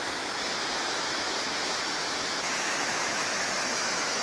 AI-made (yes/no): yes